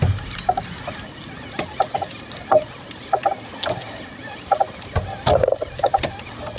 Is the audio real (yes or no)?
yes